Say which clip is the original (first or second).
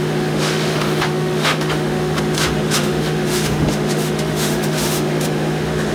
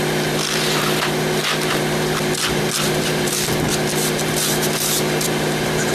second